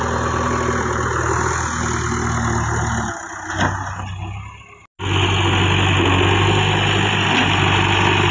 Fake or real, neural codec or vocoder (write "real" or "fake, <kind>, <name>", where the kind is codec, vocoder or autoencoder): real